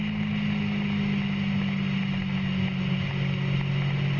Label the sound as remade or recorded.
recorded